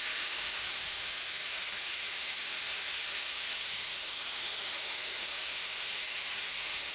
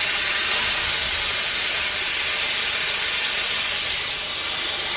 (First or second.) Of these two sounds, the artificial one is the first